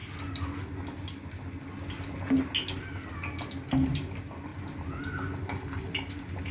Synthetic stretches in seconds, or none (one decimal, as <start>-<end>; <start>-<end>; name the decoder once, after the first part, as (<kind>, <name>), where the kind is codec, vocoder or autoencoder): none